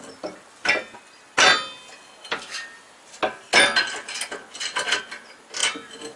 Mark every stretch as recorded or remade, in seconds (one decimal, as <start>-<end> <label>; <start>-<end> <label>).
0.0-6.2 recorded